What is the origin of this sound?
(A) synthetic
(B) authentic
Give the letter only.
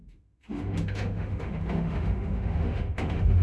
A